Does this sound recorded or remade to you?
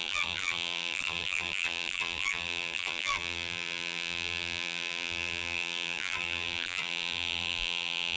remade